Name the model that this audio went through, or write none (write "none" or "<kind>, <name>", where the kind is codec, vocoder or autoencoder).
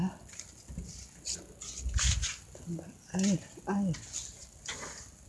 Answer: none